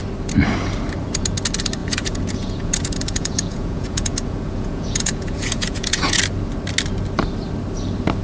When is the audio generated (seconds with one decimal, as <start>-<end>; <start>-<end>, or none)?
1.8-6.2